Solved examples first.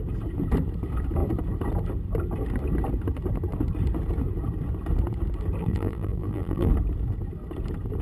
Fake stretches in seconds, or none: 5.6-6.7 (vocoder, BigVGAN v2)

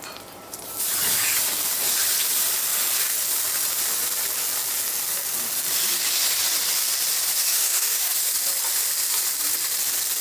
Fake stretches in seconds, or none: 7.5-8.1 (codec, DAC)

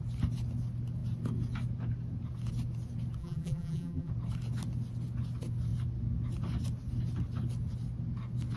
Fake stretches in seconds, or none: 3.2-4.1 (vocoder, BigVGAN v2)

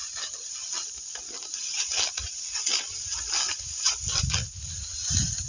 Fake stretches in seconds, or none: none

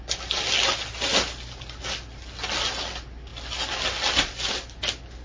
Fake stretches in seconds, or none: none

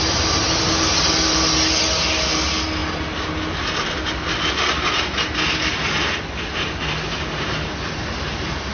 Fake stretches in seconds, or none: none